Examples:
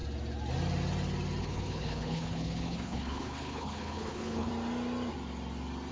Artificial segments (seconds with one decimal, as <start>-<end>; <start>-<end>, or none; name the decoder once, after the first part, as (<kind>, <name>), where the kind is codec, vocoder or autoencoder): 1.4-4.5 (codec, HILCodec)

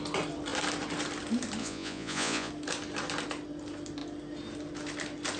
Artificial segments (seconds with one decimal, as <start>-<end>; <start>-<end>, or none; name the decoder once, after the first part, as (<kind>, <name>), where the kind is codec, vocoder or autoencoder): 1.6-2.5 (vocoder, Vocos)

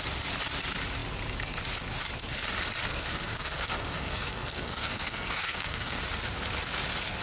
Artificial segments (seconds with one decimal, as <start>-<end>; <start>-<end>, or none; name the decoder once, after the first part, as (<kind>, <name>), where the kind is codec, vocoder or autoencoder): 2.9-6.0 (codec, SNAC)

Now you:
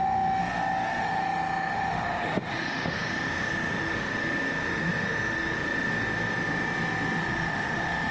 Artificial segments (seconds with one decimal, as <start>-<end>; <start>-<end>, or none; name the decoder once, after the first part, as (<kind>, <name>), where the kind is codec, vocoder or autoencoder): 0.0-0.4 (autoencoder, DAC-VAE); 1.0-5.9; 7.2-8.1

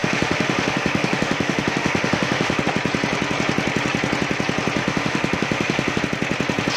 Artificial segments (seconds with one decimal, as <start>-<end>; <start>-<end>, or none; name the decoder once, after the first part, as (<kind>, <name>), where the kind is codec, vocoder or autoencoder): 0.0-2.6 (autoencoder, DAC-VAE); 4.8-6.0

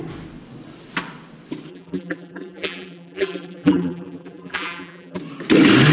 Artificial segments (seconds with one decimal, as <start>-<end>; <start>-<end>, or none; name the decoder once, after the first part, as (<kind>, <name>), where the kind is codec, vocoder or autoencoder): 1.7-5.2 (vocoder, BigVGAN v2)

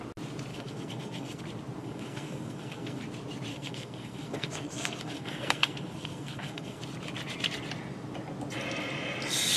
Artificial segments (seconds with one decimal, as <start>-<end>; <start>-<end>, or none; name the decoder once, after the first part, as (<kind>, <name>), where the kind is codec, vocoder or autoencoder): 0.5-1.4 (codec, SNAC); 1.8-3.0; 3.5-6.8